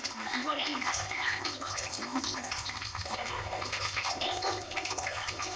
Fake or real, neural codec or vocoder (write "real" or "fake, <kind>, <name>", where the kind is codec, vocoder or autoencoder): fake, codec, ZipCodec